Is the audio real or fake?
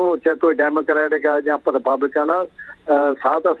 fake